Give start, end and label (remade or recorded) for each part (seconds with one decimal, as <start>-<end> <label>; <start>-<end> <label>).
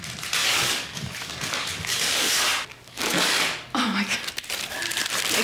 0.0-0.4 recorded; 0.4-2.3 remade; 2.3-2.7 recorded; 2.7-3.4 remade; 3.4-5.4 recorded